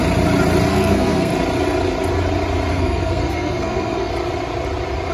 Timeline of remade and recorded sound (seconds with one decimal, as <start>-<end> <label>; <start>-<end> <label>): 0.0-0.7 recorded; 0.7-1.3 remade; 1.3-2.7 recorded; 2.7-4.1 remade; 4.1-5.1 recorded